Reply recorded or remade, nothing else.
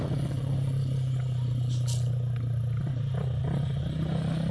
recorded